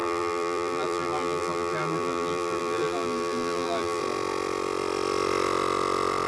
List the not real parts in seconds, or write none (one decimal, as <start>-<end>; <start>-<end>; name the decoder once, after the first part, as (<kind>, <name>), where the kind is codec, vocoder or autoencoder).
0.0-4.0 (vocoder, BigVGAN v2)

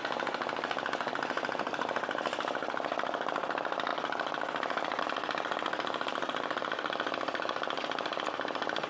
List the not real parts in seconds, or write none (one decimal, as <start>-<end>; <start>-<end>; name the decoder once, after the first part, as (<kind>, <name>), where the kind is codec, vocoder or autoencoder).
none